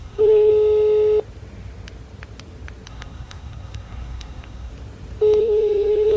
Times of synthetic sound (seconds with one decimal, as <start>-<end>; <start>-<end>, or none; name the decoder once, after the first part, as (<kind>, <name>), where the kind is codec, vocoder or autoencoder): 0.0-0.5 (codec, SNAC); 2.9-4.7; 5.4-6.2